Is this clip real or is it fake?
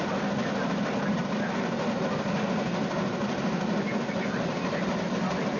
real